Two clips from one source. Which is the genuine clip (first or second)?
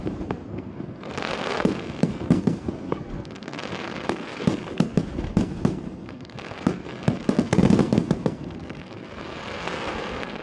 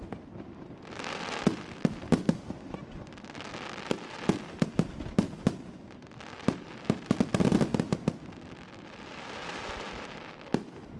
second